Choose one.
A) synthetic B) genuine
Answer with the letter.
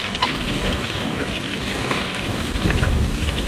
A